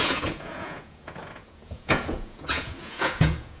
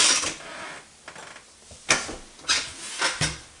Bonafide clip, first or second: second